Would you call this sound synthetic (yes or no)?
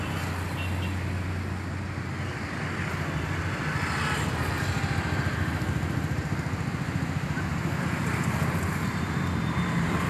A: no